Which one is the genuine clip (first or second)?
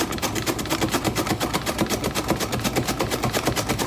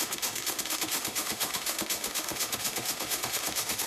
first